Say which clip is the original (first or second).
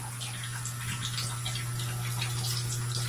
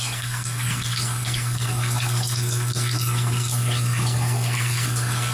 first